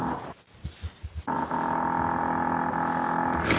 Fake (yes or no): no